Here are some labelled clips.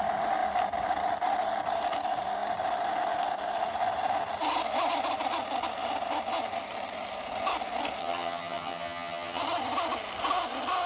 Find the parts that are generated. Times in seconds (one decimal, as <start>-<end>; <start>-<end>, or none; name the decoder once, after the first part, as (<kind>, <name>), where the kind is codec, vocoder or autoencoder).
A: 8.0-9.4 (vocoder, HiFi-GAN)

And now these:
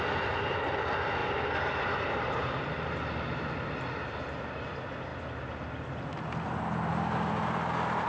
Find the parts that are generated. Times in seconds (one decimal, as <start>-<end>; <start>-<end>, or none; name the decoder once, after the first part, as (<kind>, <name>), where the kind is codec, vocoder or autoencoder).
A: none

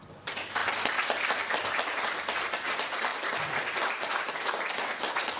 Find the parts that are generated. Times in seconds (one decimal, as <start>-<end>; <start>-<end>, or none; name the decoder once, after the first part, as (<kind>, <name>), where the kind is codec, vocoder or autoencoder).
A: none